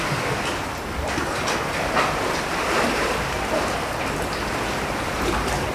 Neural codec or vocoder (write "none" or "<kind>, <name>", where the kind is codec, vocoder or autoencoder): none